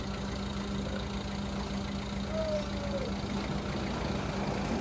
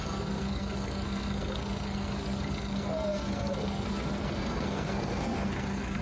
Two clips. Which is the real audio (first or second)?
first